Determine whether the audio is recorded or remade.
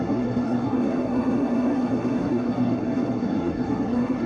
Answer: remade